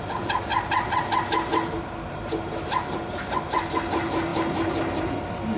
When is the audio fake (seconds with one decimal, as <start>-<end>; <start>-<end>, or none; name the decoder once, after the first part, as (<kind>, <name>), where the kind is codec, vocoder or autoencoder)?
none